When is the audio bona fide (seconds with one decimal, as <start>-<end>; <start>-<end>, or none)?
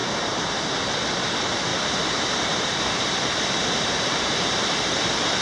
0.0-1.7; 4.9-5.4